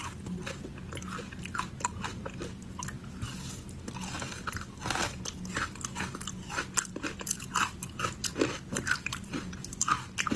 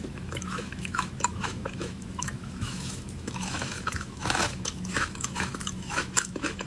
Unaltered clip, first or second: first